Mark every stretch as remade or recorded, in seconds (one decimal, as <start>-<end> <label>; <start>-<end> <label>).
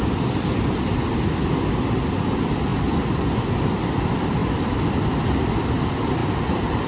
0.0-4.4 recorded; 4.4-5.7 remade; 5.7-6.9 recorded